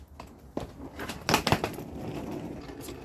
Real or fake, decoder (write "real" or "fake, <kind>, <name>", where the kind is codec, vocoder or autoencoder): real